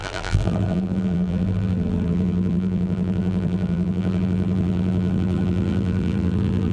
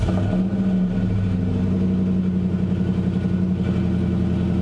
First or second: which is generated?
first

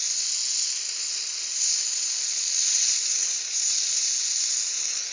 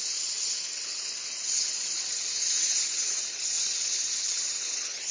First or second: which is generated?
second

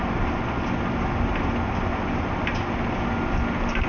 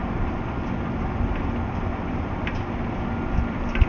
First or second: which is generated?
second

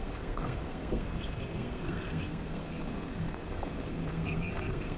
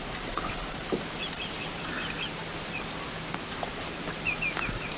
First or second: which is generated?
first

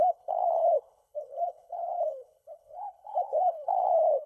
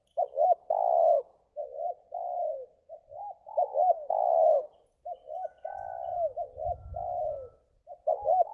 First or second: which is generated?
first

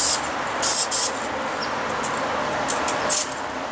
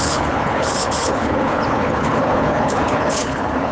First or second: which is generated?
second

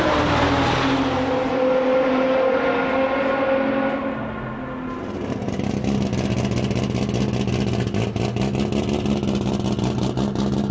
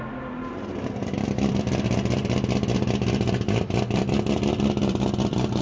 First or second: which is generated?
second